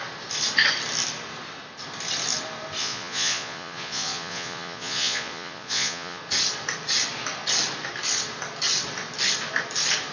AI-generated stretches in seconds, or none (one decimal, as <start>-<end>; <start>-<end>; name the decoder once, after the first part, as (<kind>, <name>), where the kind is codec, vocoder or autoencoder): 2.8-6.2 (vocoder, Vocos)